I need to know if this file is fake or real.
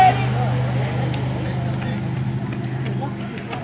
real